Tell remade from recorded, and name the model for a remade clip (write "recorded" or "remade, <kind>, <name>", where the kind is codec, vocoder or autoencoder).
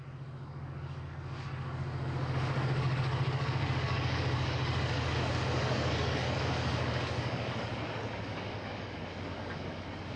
remade, codec, DAC